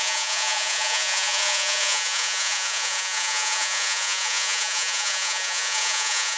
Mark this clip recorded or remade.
remade